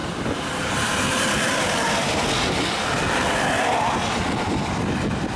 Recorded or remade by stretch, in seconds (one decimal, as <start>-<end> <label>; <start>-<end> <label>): 0.0-5.4 recorded